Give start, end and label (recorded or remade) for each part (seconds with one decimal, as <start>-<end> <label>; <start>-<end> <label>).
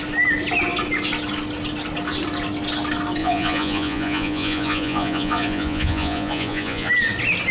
0.0-3.2 recorded; 3.2-6.9 remade; 6.9-7.5 recorded